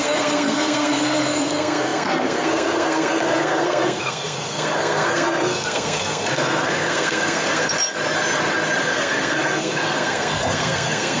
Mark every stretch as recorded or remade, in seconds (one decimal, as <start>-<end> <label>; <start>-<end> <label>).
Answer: 0.0-7.7 remade; 7.7-8.8 recorded; 8.8-11.2 remade